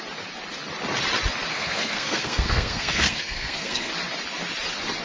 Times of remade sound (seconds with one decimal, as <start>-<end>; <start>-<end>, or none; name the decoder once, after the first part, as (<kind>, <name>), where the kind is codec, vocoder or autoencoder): 1.5-3.9 (codec, SNAC)